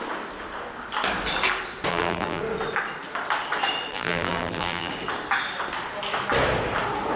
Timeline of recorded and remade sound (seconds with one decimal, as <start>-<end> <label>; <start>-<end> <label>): 0.0-1.9 recorded; 1.9-2.4 remade; 2.4-3.9 recorded; 3.9-4.9 remade; 4.9-7.2 recorded